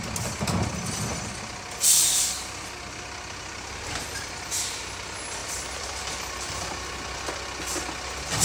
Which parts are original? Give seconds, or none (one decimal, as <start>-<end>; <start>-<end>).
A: 0.0-5.4; 6.3-8.4